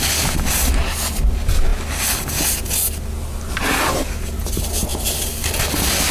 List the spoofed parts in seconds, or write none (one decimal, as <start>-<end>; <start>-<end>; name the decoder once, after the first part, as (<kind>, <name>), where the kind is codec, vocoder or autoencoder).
4.9-5.6 (vocoder, BigVGAN v2)